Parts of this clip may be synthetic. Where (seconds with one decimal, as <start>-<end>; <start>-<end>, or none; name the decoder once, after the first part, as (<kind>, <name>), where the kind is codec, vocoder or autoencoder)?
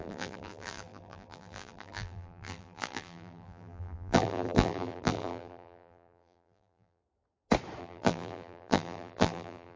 0.0-7.0 (vocoder, BigVGAN v2); 7.8-9.8